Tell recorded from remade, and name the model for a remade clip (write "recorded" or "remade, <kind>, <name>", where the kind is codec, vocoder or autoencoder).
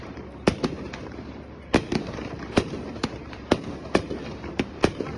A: remade, vocoder, BigVGAN v2